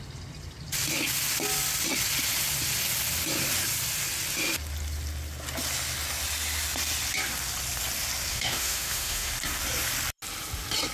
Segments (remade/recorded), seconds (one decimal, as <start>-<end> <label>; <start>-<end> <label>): 0.0-8.3 recorded; 8.3-9.3 remade; 9.3-10.9 recorded